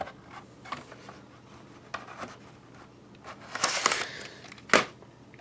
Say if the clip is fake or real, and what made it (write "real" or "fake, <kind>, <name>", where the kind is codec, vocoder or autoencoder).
real